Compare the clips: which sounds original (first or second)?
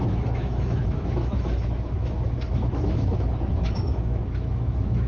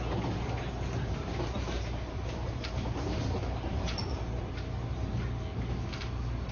second